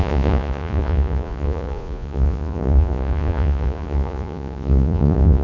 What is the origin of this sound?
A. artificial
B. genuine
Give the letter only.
A